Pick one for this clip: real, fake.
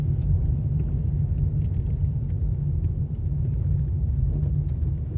real